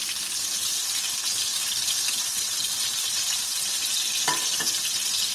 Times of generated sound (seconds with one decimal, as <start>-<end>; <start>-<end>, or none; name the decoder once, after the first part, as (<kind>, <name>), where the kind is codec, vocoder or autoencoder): 1.5-3.0 (vocoder, BigVGAN v2)